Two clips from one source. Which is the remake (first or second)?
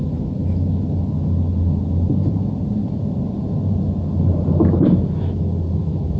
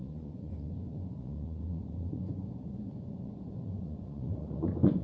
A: second